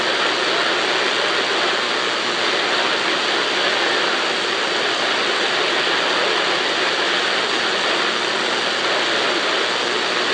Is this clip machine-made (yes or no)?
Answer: no